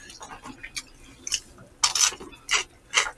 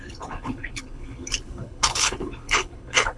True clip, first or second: first